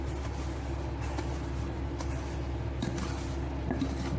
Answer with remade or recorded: recorded